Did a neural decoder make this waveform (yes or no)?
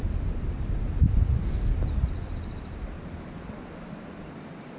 no